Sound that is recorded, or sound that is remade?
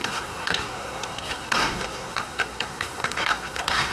remade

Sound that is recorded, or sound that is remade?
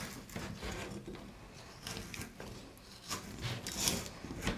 recorded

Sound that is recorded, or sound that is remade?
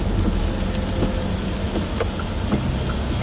recorded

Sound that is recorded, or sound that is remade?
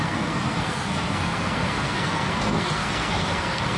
remade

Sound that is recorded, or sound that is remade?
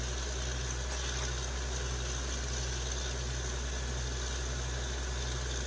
recorded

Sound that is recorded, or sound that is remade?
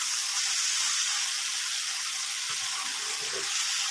recorded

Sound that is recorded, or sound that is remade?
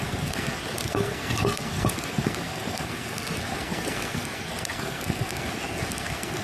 remade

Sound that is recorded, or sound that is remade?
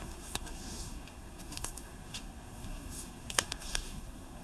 remade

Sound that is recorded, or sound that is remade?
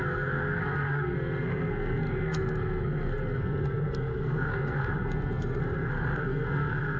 remade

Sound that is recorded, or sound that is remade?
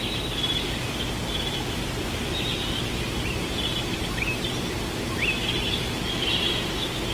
recorded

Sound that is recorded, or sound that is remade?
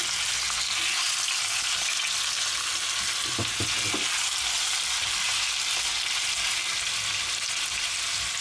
recorded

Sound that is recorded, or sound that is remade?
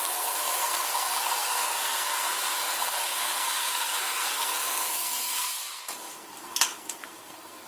remade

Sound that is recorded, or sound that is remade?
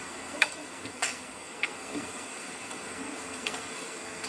remade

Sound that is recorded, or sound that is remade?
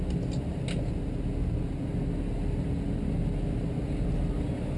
recorded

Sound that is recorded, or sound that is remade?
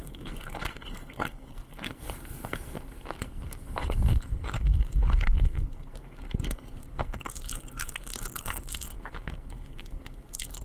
remade